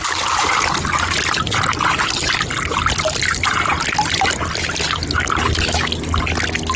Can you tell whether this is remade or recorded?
recorded